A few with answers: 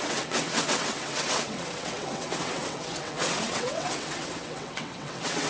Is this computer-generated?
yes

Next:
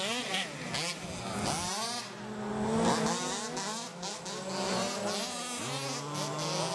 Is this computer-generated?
no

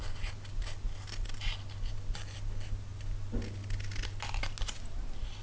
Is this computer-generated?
no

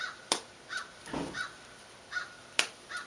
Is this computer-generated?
no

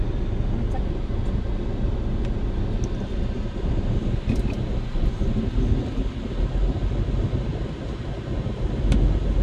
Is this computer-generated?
no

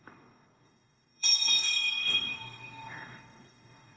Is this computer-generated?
yes